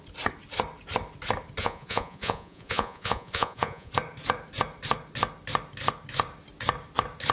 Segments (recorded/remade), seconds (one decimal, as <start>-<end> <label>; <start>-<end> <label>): 0.0-1.6 recorded; 1.6-3.9 remade; 3.9-7.3 recorded